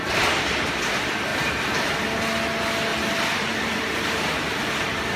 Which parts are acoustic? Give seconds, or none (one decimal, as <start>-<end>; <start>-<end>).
0.8-1.3; 1.9-2.9